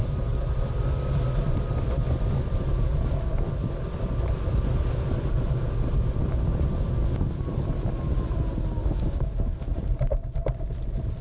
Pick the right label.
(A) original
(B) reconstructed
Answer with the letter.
B